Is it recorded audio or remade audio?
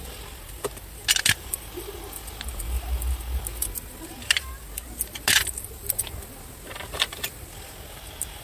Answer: recorded